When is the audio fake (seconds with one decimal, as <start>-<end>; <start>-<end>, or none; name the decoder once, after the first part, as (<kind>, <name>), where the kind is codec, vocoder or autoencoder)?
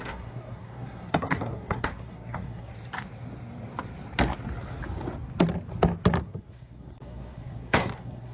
0.0-2.7 (codec, SNAC); 6.2-8.3